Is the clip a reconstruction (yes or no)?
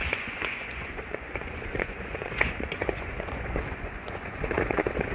yes